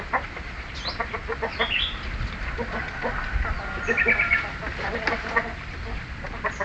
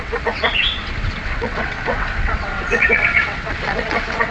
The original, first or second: first